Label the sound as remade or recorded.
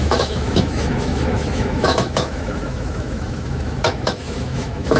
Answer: remade